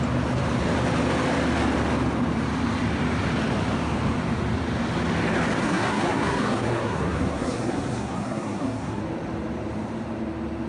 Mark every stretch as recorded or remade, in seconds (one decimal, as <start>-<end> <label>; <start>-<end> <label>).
0.0-5.6 recorded; 5.6-9.0 remade; 9.0-10.7 recorded